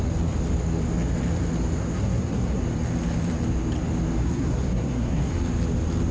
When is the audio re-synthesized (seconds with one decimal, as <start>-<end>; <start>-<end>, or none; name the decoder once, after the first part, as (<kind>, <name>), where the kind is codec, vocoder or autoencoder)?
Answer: 1.8-2.6 (codec, SNAC); 4.2-5.3